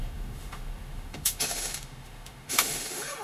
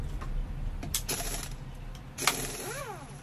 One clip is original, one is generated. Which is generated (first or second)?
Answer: first